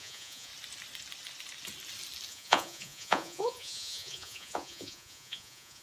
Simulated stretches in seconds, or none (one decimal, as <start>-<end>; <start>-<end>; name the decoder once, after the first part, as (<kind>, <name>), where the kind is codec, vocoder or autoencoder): 0.0-0.5 (vocoder, Vocos); 2.3-5.8